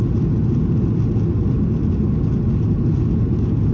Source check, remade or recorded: recorded